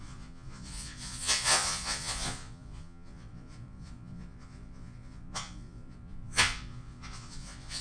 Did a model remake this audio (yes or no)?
yes